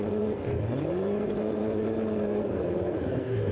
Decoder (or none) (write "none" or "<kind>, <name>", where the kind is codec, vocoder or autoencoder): codec, SNAC